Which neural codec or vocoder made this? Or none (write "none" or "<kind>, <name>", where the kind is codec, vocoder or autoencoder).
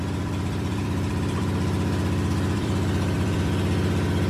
vocoder, BigVGAN v2